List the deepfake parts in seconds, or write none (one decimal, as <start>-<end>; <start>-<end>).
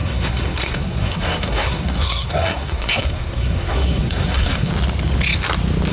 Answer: 0.0-4.7